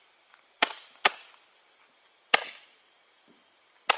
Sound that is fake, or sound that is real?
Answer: real